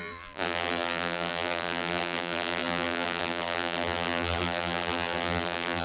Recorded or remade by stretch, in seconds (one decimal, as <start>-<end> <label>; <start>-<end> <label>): 0.0-5.8 remade